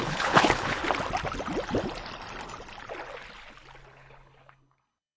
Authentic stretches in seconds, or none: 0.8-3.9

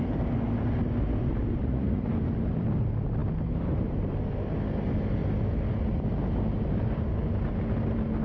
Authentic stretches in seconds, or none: 0.0-1.6; 2.1-8.2

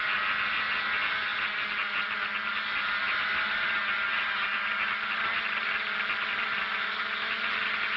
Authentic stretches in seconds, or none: 0.0-8.0

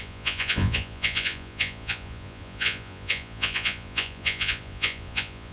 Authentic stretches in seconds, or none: none